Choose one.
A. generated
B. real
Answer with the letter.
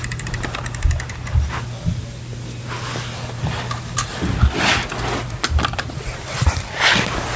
B